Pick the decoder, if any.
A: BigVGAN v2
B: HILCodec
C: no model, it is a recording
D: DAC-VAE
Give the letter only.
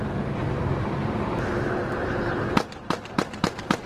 A